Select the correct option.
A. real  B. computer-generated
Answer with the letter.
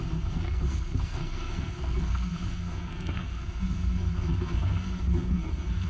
B